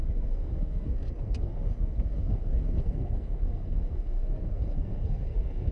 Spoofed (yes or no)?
yes